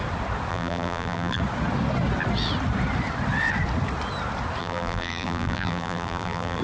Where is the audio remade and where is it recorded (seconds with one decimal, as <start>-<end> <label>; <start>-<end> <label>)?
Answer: 0.0-0.5 recorded; 0.5-1.4 remade; 1.4-4.6 recorded; 4.6-6.6 remade